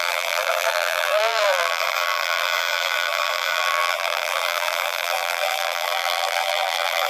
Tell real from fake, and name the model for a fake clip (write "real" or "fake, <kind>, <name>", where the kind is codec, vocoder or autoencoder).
fake, vocoder, BigVGAN v2